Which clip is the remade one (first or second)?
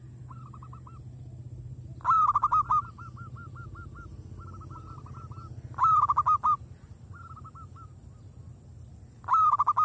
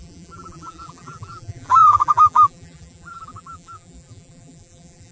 second